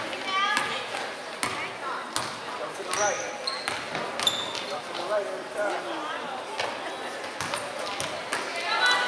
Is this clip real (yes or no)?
yes